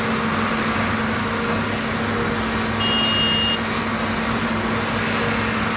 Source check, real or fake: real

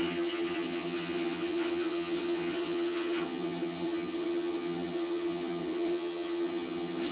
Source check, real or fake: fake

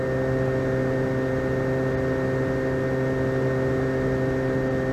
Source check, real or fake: real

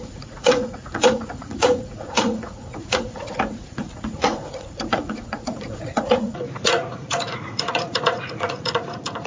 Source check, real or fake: fake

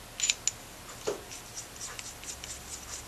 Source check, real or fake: real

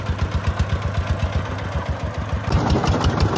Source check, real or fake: real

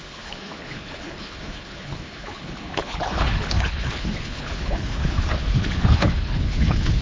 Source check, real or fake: fake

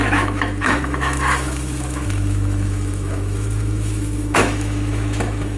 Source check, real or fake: fake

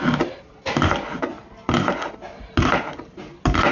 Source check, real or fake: real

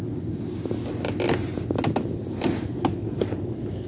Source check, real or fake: real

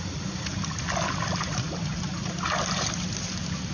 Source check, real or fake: real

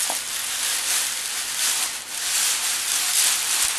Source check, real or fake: real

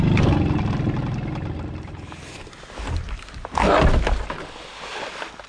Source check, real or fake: real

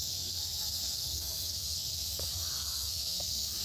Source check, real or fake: fake